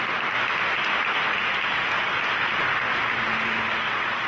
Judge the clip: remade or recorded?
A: recorded